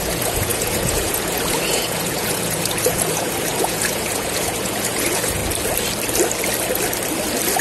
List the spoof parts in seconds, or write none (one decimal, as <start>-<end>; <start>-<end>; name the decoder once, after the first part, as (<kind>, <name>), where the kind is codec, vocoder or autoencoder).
0.0-5.4 (vocoder, Vocos)